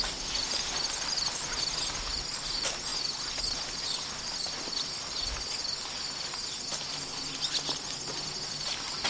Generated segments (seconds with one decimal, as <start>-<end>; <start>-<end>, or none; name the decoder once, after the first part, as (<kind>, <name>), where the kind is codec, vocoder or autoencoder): none